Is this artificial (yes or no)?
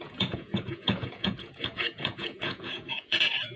yes